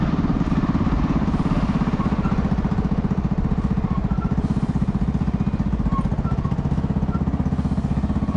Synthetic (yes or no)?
no